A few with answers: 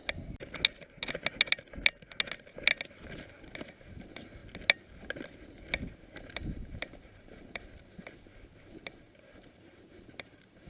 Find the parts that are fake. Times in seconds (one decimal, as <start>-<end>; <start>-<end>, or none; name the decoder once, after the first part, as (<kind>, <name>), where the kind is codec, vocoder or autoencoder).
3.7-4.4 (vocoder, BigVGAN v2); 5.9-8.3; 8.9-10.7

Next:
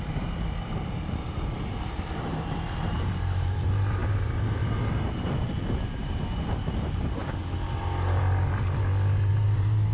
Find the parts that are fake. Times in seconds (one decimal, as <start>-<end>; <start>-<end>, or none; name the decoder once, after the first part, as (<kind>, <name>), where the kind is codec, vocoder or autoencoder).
0.0-7.2 (vocoder, BigVGAN v2); 9.3-9.9

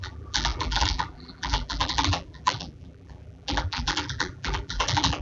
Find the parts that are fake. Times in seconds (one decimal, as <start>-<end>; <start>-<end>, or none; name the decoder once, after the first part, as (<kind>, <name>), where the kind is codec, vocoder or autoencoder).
0.0-5.2 (vocoder, BigVGAN v2)

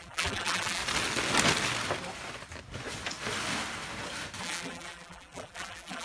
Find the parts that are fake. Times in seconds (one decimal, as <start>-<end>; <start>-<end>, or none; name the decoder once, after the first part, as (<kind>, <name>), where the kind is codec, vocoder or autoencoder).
0.0-0.8 (vocoder, BigVGAN v2); 4.4-6.0

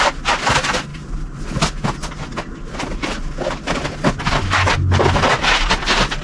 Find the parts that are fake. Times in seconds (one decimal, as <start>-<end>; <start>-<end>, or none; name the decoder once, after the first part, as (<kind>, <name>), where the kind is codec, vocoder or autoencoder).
0.9-1.6 (vocoder, BigVGAN v2)

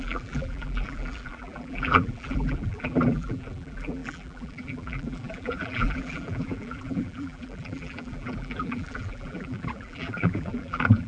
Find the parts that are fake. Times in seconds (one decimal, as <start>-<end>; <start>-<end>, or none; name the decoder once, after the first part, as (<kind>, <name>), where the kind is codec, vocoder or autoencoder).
0.0-11.1 (vocoder, BigVGAN v2)

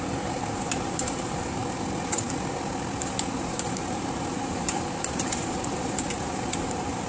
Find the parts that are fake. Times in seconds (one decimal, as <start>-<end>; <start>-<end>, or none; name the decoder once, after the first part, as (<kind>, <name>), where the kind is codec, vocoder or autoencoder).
0.0-1.6 (vocoder, BigVGAN v2); 3.3-7.1